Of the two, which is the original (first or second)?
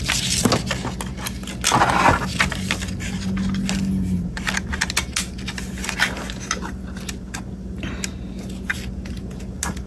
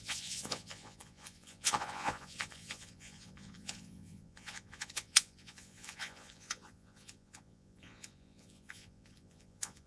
first